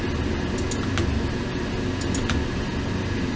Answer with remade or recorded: recorded